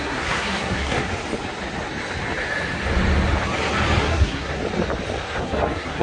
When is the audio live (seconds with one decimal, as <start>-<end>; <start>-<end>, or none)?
1.1-4.0; 4.6-5.4